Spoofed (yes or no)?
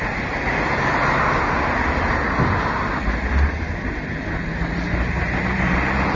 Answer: no